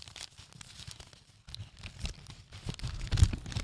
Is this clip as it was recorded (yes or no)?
yes